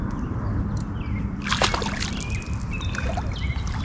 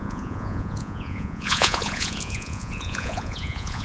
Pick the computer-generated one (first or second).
second